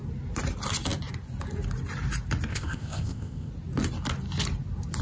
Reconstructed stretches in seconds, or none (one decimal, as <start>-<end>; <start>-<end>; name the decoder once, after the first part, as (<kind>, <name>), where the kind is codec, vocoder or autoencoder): 2.5-3.5 (codec, ZipCodec)